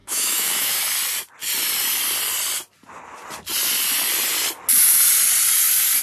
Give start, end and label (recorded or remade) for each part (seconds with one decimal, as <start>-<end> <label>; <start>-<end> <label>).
0.0-0.8 remade; 0.8-6.0 recorded

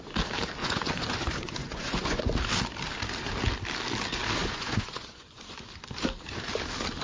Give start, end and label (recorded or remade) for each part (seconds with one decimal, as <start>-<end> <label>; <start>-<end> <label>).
0.0-0.6 recorded; 0.6-2.2 remade; 2.2-4.4 recorded; 4.4-5.7 remade; 5.7-7.0 recorded